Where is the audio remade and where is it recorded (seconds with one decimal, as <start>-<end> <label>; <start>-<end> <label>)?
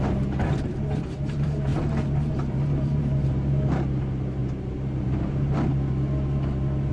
0.0-1.7 remade; 1.7-2.3 recorded; 2.3-4.4 remade; 4.4-5.0 recorded; 5.0-5.7 remade; 5.7-6.9 recorded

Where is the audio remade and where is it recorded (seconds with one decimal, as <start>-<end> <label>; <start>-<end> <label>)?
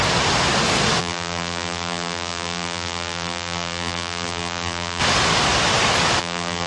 0.0-1.0 recorded; 1.0-5.0 remade; 5.0-6.2 recorded; 6.2-6.7 remade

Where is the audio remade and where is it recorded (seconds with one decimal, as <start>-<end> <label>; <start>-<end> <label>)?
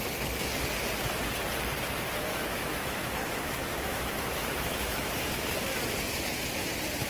0.0-2.3 recorded; 2.3-5.5 remade; 5.5-7.1 recorded